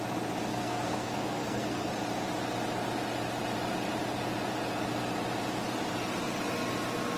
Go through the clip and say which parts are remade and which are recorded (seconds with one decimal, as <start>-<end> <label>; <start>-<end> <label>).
0.0-0.5 recorded; 0.5-1.9 remade; 1.9-7.2 recorded